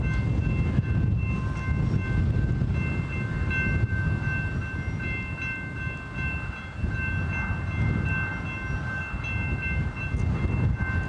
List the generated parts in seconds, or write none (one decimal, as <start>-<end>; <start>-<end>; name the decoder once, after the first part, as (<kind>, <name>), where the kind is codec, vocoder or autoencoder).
none